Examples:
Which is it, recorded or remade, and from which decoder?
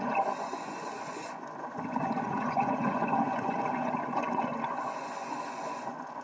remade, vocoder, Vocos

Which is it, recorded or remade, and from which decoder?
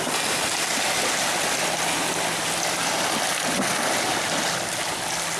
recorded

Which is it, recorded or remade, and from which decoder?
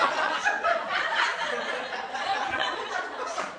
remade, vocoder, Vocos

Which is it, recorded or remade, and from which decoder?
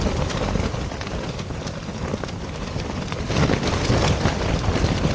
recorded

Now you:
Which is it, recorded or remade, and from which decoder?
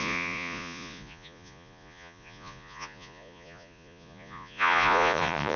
remade, vocoder, Vocos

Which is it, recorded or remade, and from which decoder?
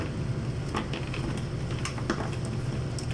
recorded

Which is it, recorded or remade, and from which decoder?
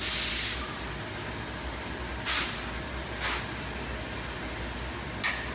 recorded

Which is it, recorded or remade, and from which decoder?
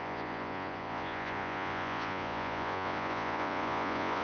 remade, vocoder, Vocos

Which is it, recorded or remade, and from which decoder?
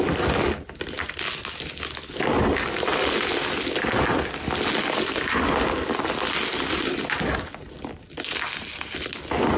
recorded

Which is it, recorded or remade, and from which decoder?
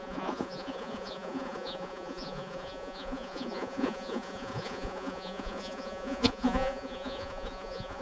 remade, vocoder, Vocos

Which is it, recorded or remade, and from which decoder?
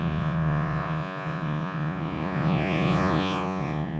remade, vocoder, Vocos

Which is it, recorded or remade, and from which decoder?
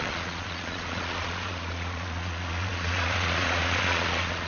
remade, vocoder, Vocos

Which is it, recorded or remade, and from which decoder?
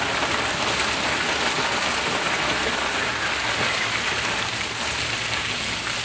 recorded